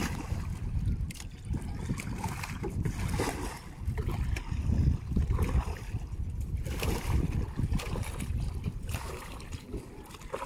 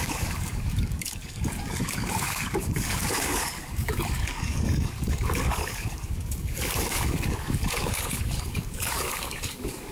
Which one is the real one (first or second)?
first